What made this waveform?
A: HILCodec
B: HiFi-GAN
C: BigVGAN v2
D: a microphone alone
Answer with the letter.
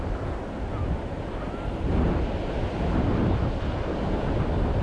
D